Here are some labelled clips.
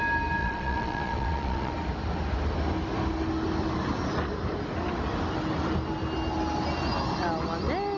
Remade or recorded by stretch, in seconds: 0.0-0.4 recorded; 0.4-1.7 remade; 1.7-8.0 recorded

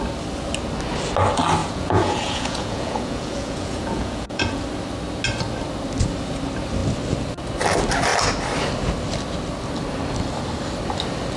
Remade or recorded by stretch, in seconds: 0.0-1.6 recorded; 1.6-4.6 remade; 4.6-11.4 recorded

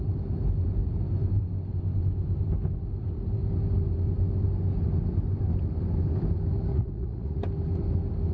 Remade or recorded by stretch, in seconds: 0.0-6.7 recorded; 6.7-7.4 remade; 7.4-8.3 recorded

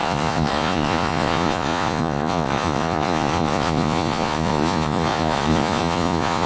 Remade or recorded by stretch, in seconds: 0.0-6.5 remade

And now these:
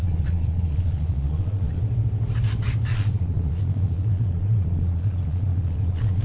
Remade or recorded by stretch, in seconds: 0.0-1.8 remade; 1.8-2.9 recorded; 2.9-6.2 remade

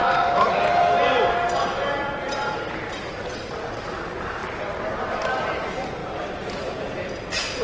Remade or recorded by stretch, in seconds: 0.0-7.6 recorded